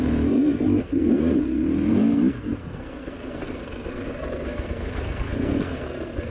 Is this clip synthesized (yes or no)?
yes